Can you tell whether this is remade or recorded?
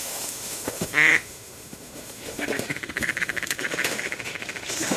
remade